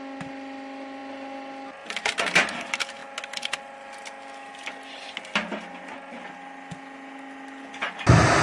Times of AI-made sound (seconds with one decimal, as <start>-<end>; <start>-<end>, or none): none